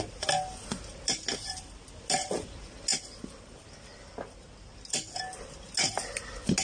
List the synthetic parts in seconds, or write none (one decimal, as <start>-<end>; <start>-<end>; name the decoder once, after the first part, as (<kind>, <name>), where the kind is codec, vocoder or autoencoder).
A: none